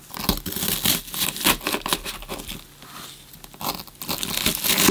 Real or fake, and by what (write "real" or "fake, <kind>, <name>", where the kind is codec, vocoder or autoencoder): real